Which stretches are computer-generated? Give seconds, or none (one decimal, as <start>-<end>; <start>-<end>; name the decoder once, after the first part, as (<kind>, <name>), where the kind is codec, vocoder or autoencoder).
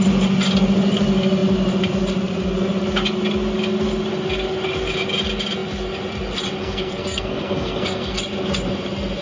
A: 6.6-8.2 (codec, SNAC)